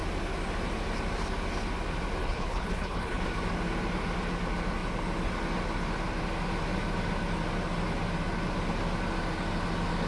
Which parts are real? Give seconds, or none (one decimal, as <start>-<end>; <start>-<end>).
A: 0.0-2.2; 3.2-10.1